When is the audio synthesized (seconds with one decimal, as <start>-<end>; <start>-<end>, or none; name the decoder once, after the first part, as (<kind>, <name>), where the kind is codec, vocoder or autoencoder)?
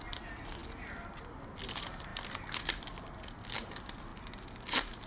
none